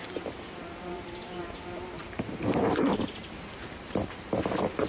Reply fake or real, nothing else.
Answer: fake